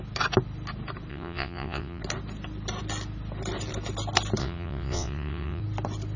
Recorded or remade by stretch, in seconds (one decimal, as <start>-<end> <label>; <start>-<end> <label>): 0.0-1.1 recorded; 1.1-2.0 remade; 2.0-4.4 recorded; 4.4-5.6 remade; 5.6-6.2 recorded

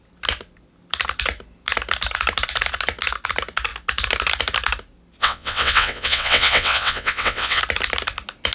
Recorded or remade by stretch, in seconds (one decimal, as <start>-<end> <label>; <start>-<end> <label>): 0.0-5.2 recorded; 5.2-7.6 remade; 7.6-8.5 recorded

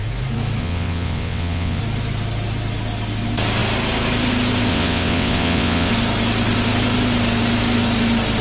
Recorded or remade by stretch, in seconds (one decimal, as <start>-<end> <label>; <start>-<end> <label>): 0.0-0.6 recorded; 0.6-1.8 remade; 1.8-4.7 recorded; 4.7-5.9 remade; 5.9-8.4 recorded